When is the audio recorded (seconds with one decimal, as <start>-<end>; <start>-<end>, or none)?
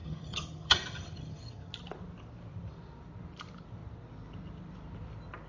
1.7-5.5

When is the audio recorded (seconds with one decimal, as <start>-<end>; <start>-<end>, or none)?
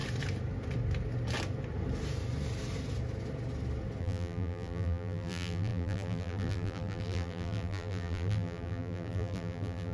0.0-4.0